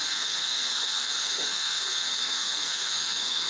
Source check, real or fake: fake